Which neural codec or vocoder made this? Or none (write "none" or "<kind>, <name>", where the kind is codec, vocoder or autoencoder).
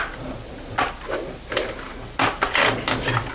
none